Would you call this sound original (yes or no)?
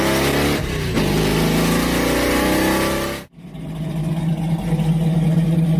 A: yes